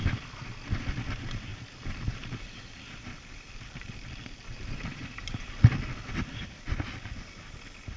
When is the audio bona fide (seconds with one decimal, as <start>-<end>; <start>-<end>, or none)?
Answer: 0.0-1.5; 5.5-8.0